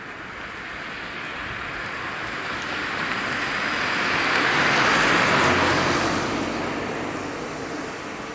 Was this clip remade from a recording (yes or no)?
no